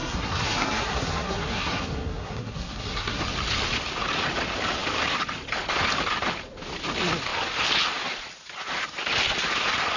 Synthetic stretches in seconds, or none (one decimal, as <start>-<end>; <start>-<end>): 0.0-3.2